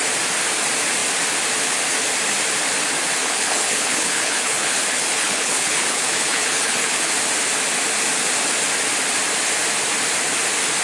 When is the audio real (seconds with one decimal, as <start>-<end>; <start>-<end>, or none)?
0.0-3.2; 7.1-10.8